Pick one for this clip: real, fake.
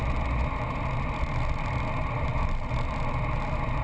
real